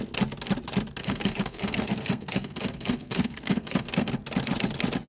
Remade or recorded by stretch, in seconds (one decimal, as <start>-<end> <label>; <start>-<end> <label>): 0.0-1.0 recorded; 1.0-4.1 remade; 4.1-5.1 recorded